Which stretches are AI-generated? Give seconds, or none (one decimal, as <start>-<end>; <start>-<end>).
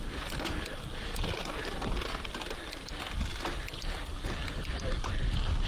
none